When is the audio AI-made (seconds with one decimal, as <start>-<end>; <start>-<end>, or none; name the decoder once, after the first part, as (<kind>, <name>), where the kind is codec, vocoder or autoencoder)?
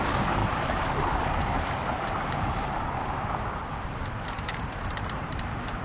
0.0-5.8 (vocoder, BigVGAN v2)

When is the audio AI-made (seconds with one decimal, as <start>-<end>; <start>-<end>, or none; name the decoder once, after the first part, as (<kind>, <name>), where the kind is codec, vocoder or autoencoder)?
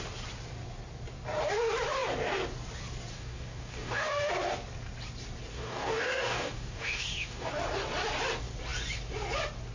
3.1-4.3 (codec, DAC); 5.5-7.5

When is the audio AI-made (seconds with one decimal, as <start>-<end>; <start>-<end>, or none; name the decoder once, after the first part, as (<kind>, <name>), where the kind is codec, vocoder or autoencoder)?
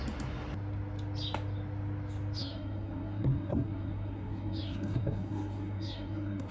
2.4-6.5 (codec, SNAC)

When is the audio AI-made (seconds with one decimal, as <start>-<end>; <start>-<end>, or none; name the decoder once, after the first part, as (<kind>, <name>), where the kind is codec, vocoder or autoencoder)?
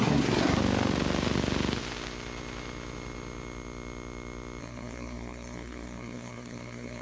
0.0-0.6 (codec, SNAC); 4.6-7.0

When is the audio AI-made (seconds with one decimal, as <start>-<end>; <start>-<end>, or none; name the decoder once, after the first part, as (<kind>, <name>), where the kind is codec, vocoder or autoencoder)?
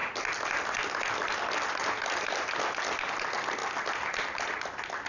none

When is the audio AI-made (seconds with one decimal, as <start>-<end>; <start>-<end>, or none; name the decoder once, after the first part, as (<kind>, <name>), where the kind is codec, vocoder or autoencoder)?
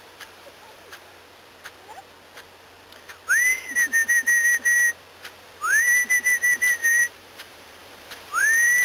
0.0-1.1 (vocoder, BigVGAN v2); 6.3-8.8